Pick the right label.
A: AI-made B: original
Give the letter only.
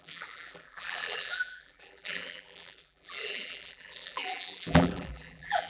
A